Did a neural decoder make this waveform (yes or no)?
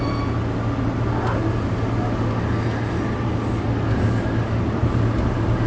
no